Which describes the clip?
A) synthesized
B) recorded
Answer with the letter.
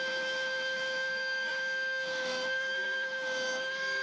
A